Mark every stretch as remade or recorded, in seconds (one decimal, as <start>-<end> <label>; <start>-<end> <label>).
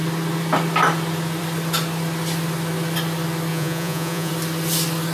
0.0-3.5 recorded; 3.5-4.3 remade; 4.3-5.1 recorded